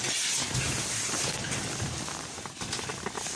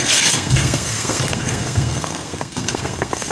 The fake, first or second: second